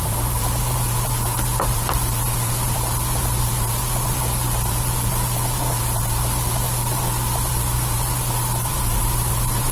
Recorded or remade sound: remade